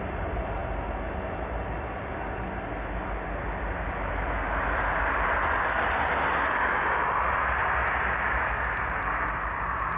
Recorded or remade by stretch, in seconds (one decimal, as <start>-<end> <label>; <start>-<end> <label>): 0.0-10.0 recorded